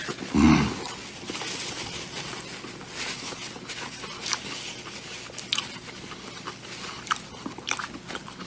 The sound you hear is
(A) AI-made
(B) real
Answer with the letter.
B